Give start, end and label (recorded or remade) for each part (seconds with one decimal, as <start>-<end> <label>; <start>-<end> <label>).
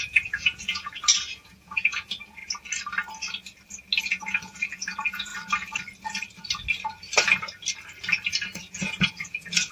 0.0-2.4 remade; 2.4-4.0 recorded; 4.0-5.3 remade; 5.3-8.6 recorded; 8.6-9.7 remade